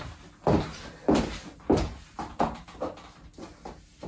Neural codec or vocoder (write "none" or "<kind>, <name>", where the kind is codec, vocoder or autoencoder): none